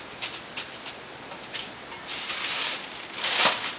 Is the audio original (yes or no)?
yes